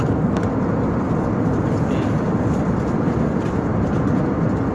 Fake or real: real